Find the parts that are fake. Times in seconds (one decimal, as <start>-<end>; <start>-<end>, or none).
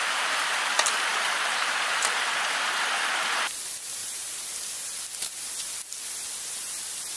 1.1-2.2; 4.0-4.5